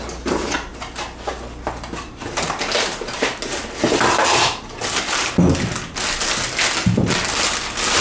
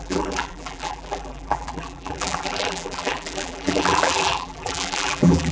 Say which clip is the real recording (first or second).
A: first